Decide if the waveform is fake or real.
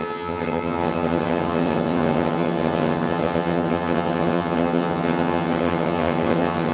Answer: fake